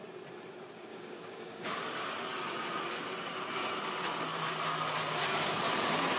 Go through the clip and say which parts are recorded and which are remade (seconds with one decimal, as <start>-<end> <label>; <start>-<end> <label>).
0.0-0.9 recorded; 0.9-1.7 remade; 1.7-6.2 recorded